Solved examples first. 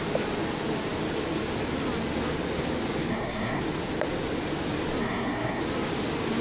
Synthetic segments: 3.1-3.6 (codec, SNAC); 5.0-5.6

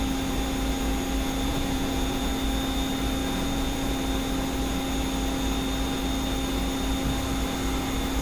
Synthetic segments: 1.5-2.3 (vocoder, Vocos); 3.2-3.9

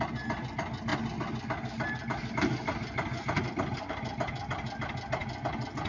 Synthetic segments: none

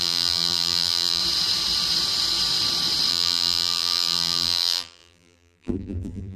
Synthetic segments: 0.0-1.2 (vocoder, BigVGAN v2); 3.1-6.4